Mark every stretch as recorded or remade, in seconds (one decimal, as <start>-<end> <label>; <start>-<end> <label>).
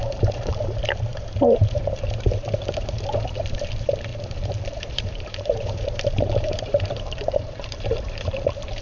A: 0.0-8.8 remade